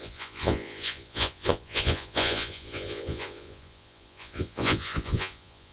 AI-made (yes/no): yes